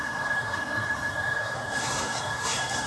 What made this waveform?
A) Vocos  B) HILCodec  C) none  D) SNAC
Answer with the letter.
D